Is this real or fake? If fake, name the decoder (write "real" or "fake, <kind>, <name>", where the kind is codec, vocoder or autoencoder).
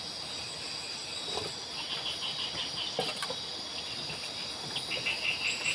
real